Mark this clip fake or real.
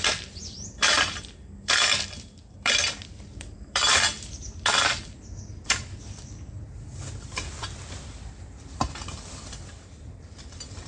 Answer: fake